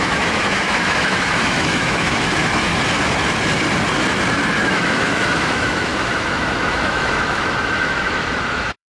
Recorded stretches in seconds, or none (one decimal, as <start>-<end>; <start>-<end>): 2.7-4.6